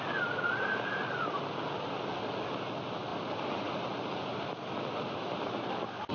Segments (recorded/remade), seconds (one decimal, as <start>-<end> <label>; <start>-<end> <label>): 0.0-6.1 recorded